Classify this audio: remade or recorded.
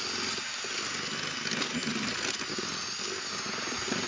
recorded